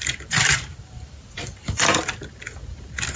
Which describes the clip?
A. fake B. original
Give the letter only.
A